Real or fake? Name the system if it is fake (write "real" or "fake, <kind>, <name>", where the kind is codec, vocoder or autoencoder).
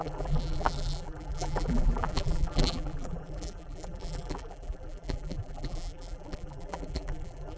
fake, vocoder, BigVGAN v2